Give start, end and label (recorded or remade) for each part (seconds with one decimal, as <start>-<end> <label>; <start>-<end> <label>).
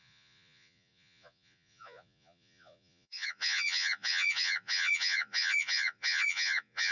0.0-6.9 remade